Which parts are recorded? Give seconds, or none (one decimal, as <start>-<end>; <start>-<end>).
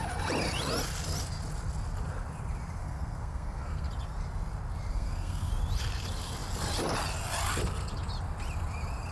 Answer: 0.0-2.8; 3.9-4.9; 5.5-9.1